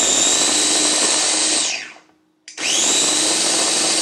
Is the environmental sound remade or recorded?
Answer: recorded